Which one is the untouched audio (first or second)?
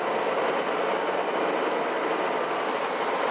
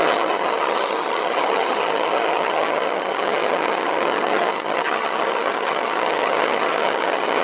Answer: first